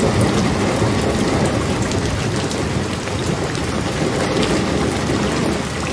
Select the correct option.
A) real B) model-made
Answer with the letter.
A